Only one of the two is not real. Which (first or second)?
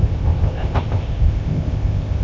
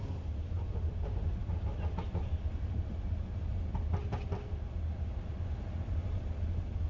first